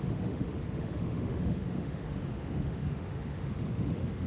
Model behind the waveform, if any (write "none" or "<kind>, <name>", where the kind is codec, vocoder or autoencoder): autoencoder, DAC-VAE